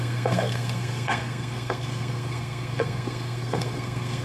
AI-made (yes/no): yes